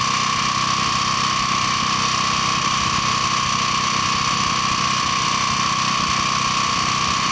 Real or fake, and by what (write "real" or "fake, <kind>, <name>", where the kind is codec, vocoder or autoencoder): real